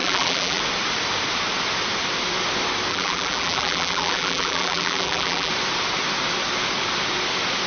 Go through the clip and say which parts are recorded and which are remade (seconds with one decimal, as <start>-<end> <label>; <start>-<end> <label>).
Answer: 0.0-0.6 remade; 0.6-2.9 recorded; 2.9-5.5 remade; 5.5-7.7 recorded